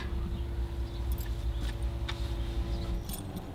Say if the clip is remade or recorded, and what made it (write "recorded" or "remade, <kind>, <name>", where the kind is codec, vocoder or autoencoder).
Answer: recorded